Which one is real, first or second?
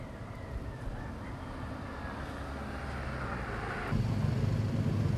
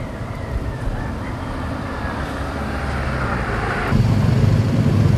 first